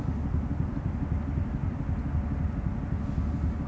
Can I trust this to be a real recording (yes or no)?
yes